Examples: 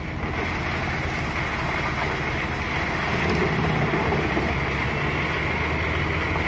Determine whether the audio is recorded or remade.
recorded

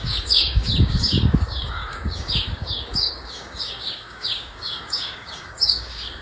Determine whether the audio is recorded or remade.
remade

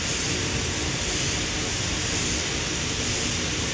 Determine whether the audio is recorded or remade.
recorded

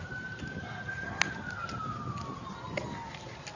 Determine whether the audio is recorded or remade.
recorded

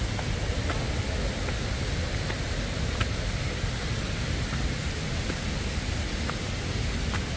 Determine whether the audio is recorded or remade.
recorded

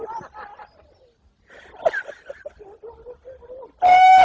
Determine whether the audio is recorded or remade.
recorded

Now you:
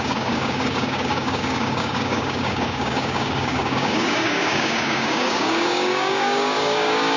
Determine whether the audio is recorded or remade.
remade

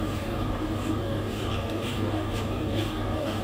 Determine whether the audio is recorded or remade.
remade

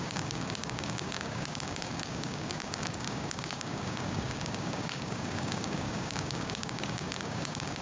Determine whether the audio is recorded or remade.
remade